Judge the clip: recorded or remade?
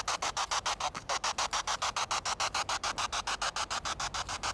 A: recorded